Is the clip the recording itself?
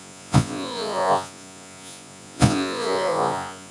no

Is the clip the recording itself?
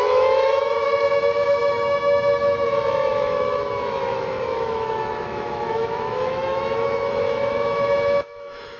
no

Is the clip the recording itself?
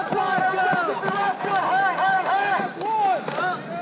yes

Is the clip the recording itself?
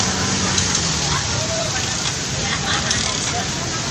no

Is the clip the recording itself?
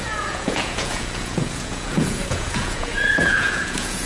no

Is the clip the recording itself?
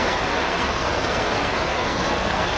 no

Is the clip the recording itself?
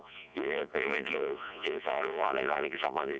no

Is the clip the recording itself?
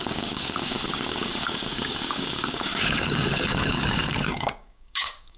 no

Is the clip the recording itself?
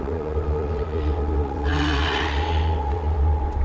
no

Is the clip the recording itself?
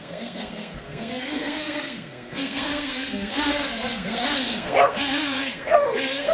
no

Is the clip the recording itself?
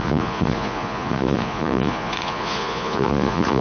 no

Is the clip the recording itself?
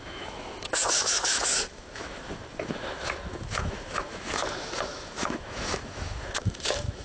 no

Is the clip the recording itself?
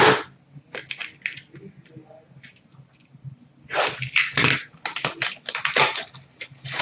yes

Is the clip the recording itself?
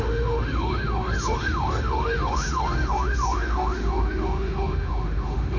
no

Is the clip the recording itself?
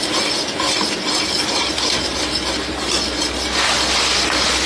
yes